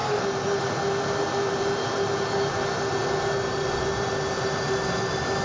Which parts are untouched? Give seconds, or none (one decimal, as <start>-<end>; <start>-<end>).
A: 0.0-5.4